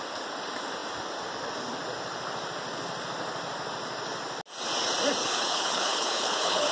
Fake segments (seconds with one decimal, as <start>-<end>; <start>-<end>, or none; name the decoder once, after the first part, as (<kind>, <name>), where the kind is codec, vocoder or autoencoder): 5.2-6.7 (codec, HILCodec)